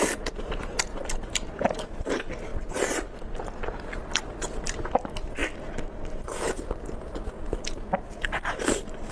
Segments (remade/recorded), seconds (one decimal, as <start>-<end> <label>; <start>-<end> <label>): 0.0-0.6 remade; 0.6-9.1 recorded